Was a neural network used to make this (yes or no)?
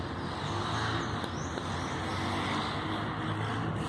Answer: no